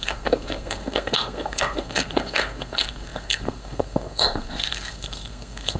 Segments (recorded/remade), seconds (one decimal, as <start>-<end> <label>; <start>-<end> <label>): 0.0-5.8 remade

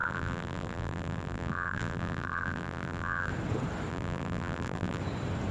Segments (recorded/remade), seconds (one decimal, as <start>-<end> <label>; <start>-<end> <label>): 0.0-3.3 remade; 3.3-3.9 recorded; 3.9-5.0 remade; 5.0-5.5 recorded

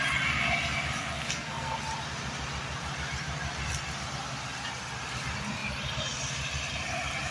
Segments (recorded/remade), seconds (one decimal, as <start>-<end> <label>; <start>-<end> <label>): 0.0-1.2 recorded; 1.2-1.8 remade; 1.8-7.3 recorded

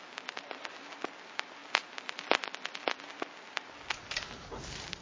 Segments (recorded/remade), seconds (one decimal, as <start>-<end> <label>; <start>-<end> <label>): 0.0-5.0 recorded

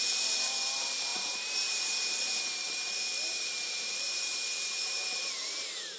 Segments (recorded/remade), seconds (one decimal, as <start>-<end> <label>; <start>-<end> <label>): 0.0-6.0 remade